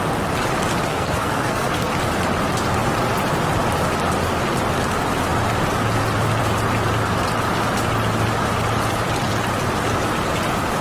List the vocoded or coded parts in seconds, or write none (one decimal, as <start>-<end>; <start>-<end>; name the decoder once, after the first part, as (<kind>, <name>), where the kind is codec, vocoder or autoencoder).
0.9-1.9 (codec, SNAC)